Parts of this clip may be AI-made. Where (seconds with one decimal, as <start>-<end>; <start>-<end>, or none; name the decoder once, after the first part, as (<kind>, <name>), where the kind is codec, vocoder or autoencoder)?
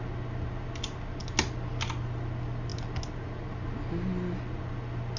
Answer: none